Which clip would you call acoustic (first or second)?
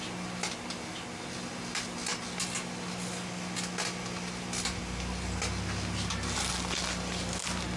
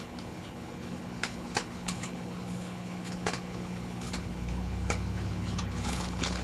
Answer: first